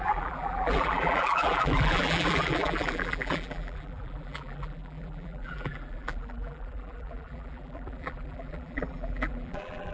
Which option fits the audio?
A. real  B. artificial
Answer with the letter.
B